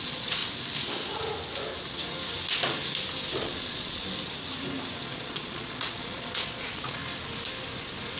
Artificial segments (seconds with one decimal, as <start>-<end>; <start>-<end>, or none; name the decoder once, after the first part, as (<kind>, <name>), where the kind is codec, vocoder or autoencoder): 0.0-0.4 (vocoder, Vocos); 3.3-4.0; 5.0-7.0